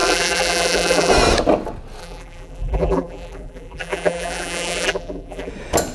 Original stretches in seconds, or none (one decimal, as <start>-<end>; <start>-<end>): 1.1-2.0; 5.5-5.9